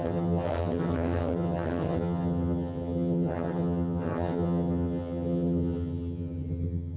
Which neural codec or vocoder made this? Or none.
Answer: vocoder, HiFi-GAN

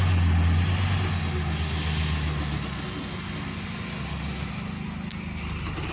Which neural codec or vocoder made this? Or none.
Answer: none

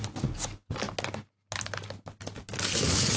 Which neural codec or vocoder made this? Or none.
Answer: none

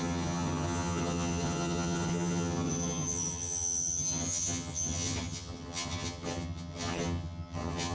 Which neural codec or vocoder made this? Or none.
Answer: vocoder, HiFi-GAN